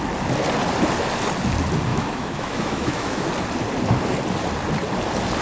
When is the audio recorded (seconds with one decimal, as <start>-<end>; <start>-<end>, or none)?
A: 0.0-1.9; 3.3-5.4